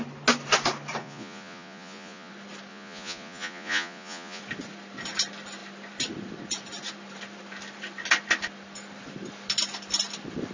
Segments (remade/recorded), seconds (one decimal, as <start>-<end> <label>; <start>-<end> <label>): 0.0-1.0 recorded; 1.0-2.3 remade; 2.3-2.7 recorded; 2.7-4.4 remade; 4.4-10.5 recorded